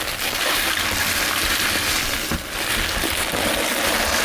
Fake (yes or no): no